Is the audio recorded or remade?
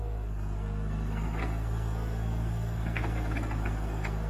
remade